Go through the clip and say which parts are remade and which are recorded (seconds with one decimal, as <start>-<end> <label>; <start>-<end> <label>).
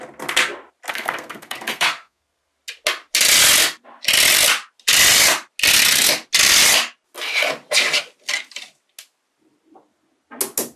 0.0-0.9 recorded; 0.9-2.5 remade; 2.5-10.8 recorded